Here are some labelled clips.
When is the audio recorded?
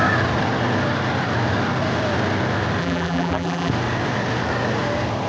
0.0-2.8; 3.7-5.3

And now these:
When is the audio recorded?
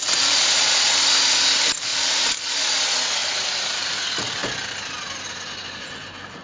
1.1-1.9; 2.6-3.2; 3.9-6.4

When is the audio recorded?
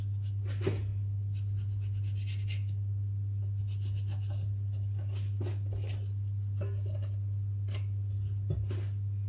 0.0-9.3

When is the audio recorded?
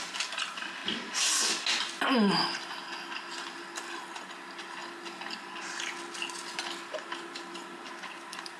0.8-4.2; 4.8-7.5